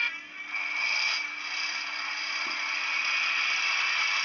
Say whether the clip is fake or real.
real